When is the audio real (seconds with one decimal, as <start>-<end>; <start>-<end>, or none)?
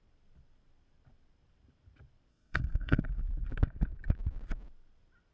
0.0-2.3; 3.0-5.3